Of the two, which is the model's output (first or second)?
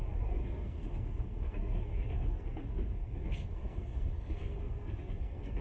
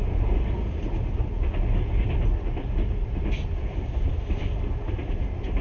first